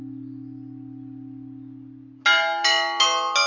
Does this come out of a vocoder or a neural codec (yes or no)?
no